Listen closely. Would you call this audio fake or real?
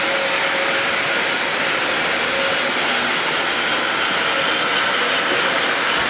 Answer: real